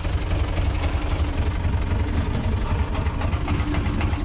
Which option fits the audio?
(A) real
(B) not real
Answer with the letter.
A